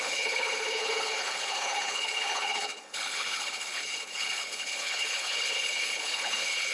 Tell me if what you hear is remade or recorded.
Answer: remade